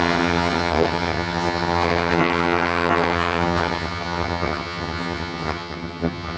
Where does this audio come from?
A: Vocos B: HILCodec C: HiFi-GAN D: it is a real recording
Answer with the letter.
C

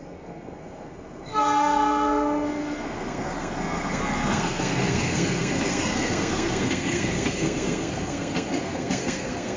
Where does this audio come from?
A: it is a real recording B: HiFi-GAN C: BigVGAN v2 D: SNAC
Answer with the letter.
D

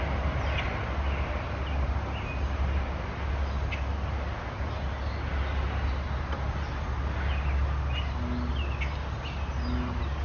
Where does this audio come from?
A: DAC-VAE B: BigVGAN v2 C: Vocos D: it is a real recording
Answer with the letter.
D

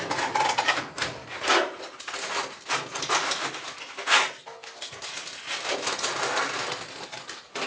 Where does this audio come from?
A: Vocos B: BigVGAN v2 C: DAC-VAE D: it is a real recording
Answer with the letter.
D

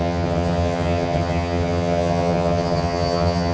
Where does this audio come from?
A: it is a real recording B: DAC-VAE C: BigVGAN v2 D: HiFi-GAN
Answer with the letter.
D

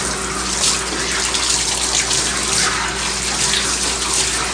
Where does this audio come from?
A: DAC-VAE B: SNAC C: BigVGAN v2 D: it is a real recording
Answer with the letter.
D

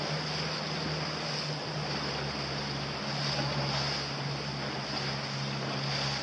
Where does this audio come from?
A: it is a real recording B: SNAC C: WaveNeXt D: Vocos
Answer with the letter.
A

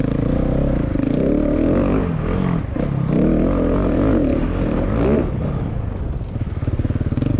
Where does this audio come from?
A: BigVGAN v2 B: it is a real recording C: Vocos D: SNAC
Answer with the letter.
B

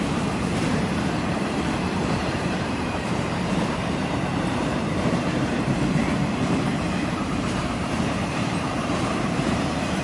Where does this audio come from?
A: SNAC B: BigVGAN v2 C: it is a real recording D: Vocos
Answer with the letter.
B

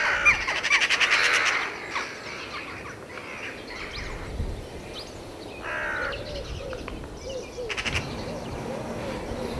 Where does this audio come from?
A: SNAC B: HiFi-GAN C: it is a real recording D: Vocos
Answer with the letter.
C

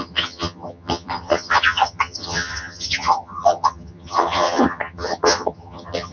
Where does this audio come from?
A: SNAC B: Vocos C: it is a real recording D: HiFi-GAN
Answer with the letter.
D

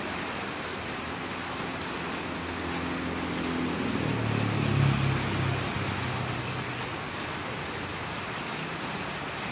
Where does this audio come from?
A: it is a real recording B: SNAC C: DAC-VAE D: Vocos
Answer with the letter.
A